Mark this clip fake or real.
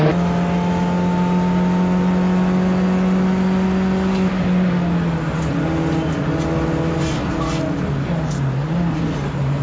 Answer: real